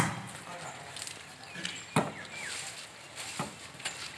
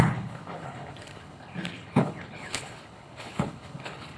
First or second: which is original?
first